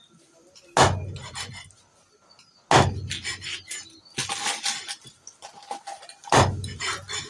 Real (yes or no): yes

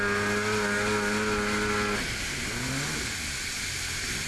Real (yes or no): yes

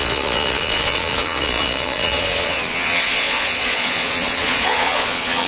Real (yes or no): no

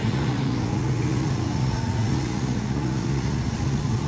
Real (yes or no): no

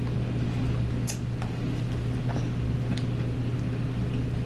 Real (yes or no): yes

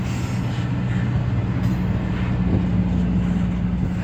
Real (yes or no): yes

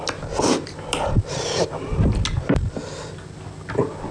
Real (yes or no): yes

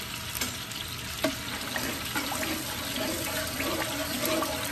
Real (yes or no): yes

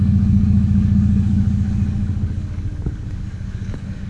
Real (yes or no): no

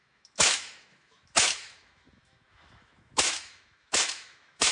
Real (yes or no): no